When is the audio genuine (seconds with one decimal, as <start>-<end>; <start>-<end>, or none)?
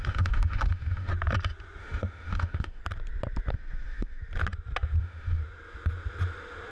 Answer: 1.1-1.8; 2.8-3.5; 4.2-5.0; 5.4-6.7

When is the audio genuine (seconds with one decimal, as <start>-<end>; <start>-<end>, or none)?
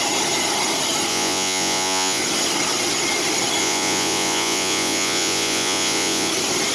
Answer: 0.0-1.1; 2.2-3.6; 6.3-6.7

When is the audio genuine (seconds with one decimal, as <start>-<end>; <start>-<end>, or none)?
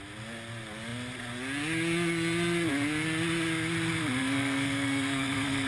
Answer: 0.0-4.2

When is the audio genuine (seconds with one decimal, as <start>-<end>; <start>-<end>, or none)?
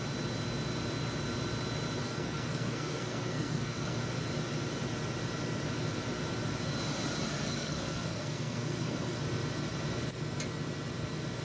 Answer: 0.0-2.0; 4.0-7.3; 9.2-11.4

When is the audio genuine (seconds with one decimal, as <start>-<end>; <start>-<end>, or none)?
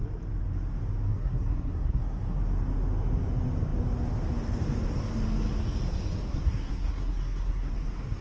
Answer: 0.0-1.1; 2.4-6.3; 7.7-8.2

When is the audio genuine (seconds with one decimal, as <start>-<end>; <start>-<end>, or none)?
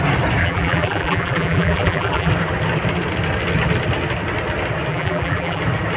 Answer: 0.0-0.4; 2.3-4.9; 5.6-6.0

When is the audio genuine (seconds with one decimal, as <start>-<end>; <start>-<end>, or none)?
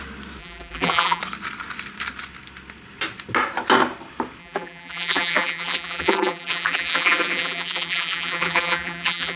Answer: 0.0-0.4; 1.2-4.4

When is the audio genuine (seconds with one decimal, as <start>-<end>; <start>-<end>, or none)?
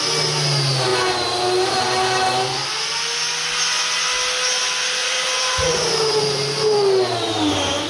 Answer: 0.0-5.0; 5.9-7.9